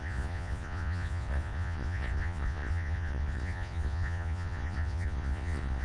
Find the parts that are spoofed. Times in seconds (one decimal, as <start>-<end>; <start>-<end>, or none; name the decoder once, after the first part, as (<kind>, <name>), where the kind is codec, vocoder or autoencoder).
0.0-5.8 (vocoder, Vocos)